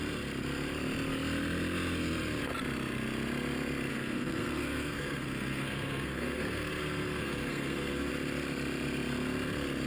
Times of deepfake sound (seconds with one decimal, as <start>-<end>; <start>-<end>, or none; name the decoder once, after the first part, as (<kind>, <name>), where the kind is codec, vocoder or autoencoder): 3.9-8.1 (codec, SNAC)